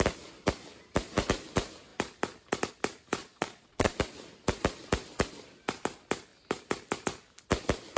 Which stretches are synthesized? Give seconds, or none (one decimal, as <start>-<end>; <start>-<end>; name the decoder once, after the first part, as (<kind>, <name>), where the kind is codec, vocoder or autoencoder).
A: 3.2-4.0 (vocoder, Vocos)